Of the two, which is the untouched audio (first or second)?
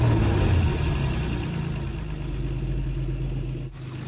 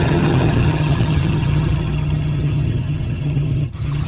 first